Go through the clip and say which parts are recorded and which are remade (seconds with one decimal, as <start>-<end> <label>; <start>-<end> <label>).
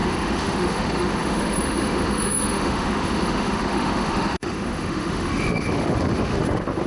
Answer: 0.0-6.9 remade